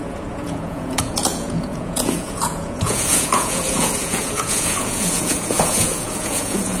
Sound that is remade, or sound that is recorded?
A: remade